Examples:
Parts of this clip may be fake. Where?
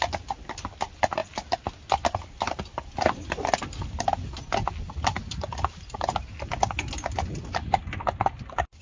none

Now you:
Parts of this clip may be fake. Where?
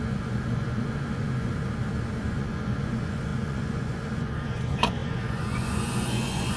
0.0-1.5 (vocoder, Vocos); 2.2-6.6